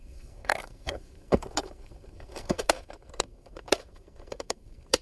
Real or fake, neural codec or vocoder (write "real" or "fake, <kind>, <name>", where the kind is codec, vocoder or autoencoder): fake, codec, SNAC